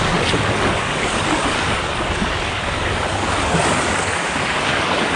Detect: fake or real fake